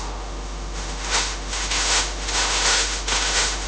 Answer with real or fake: fake